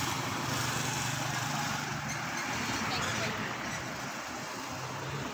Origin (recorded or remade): recorded